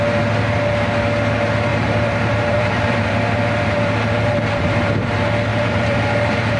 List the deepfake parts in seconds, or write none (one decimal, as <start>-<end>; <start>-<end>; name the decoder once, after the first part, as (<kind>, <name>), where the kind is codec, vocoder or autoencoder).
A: 1.7-4.9 (vocoder, BigVGAN v2); 5.5-6.6